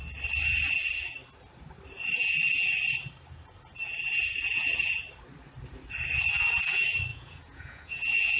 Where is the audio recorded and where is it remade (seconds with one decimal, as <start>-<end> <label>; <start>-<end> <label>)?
0.0-7.1 recorded; 7.1-8.4 remade